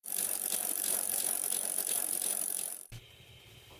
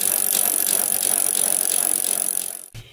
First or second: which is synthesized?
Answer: first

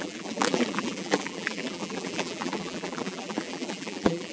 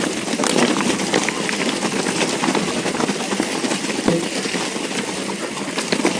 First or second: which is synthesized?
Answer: first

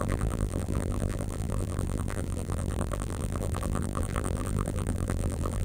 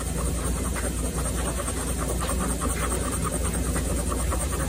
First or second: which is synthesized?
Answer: first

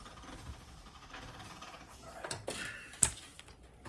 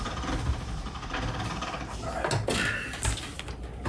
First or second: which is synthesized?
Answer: first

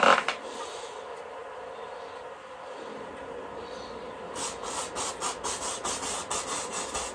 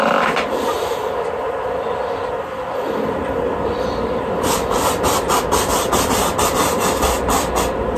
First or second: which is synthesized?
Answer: second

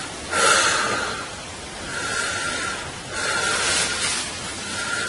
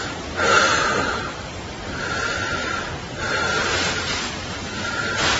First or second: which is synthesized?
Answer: second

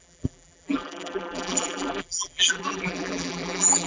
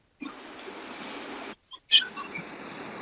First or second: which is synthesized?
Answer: first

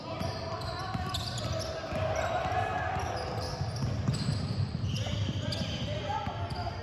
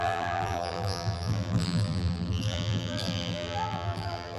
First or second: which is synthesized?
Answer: second